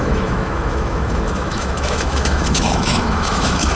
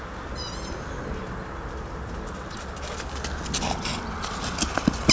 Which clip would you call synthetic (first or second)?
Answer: first